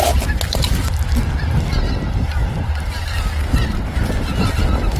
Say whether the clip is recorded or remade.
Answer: recorded